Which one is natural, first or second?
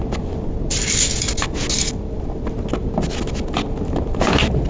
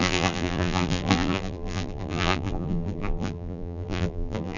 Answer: first